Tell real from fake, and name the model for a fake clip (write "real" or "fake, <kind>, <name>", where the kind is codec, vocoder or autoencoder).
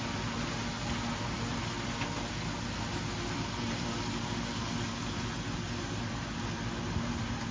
real